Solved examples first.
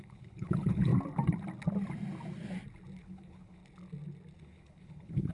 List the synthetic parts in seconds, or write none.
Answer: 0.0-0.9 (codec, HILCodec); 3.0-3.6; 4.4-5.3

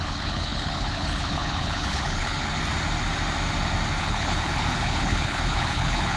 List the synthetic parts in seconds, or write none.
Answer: 0.0-2.5 (codec, HILCodec); 4.0-6.2

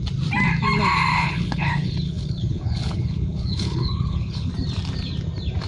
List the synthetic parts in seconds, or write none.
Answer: 1.1-4.5 (codec, HILCodec)

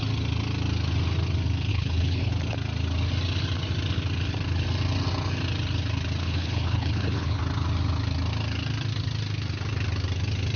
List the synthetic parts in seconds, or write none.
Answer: 1.7-2.3 (codec, HILCodec); 6.2-7.4

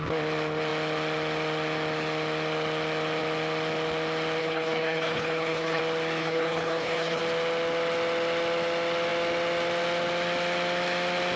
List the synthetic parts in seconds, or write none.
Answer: 4.4-5.8 (codec, HILCodec); 6.2-7.2

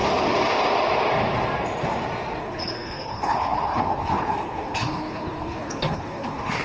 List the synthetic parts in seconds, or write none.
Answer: 2.4-6.6 (codec, HILCodec)

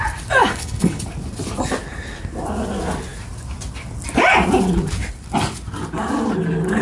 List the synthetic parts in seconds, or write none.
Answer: 0.5-1.0 (codec, HILCodec)

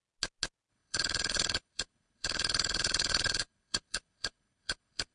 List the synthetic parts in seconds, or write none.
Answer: 0.7-5.1 (codec, HILCodec)